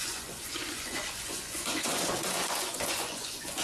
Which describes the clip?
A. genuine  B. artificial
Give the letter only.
B